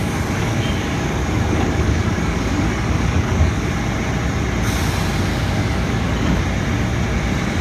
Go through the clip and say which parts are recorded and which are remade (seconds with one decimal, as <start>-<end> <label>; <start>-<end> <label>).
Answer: 0.0-3.7 remade; 3.7-5.3 recorded; 5.3-6.4 remade; 6.4-7.6 recorded